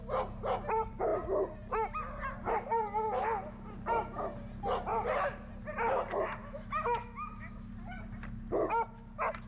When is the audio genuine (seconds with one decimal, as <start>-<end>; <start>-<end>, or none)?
0.0-6.4; 7.7-9.5